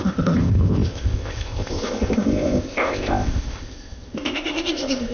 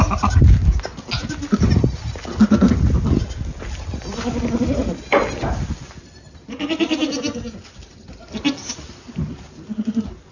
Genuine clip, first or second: second